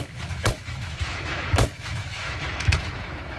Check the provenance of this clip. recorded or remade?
remade